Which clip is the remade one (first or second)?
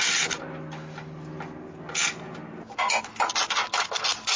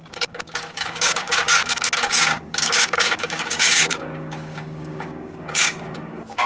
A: second